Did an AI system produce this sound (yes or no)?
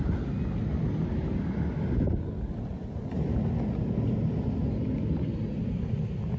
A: no